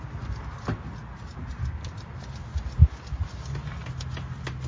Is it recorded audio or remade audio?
recorded